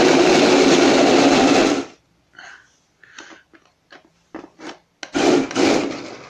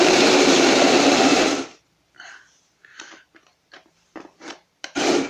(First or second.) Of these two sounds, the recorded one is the first